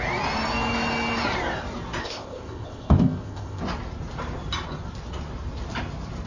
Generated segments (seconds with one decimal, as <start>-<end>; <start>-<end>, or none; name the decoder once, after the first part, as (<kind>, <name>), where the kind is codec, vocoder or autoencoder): 2.0-3.6 (codec, ZipCodec)